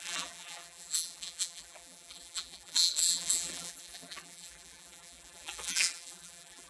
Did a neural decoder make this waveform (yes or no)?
yes